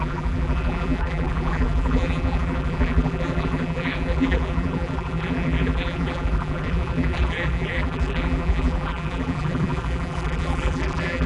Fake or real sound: fake